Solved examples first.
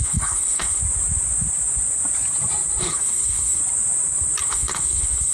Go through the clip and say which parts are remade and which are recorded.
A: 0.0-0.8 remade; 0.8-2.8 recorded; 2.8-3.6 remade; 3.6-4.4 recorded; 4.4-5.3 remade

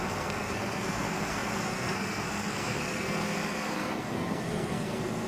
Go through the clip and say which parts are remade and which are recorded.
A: 0.0-5.3 remade

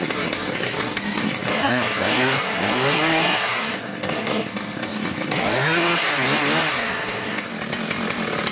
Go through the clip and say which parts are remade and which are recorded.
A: 0.0-6.1 remade; 6.1-6.7 recorded; 6.7-7.5 remade; 7.5-8.5 recorded

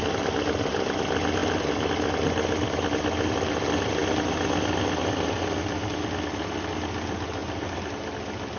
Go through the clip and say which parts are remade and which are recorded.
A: 0.0-8.6 recorded

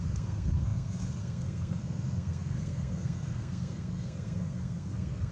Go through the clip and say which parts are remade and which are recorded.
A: 0.0-5.3 remade

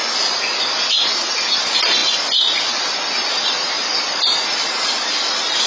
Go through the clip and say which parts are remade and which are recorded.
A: 0.0-0.9 recorded; 0.9-5.7 remade

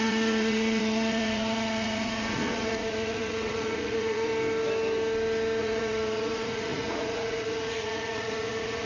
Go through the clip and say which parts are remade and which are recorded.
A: 0.0-4.3 remade; 4.3-5.6 recorded; 5.6-8.9 remade

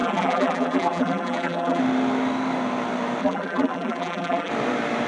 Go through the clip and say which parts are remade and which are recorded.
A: 0.0-1.8 remade; 1.8-3.2 recorded; 3.2-4.5 remade; 4.5-5.1 recorded